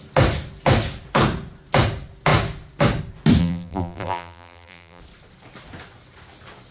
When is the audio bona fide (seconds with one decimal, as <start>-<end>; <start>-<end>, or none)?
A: 0.0-3.4; 5.0-6.7